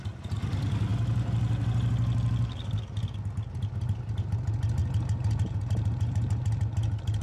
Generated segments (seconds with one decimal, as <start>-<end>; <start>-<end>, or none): none